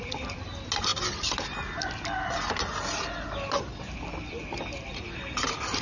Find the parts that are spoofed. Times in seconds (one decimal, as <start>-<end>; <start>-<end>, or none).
none